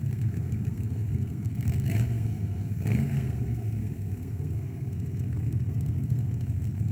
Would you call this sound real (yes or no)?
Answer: no